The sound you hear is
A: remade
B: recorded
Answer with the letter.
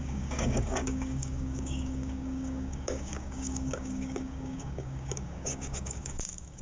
A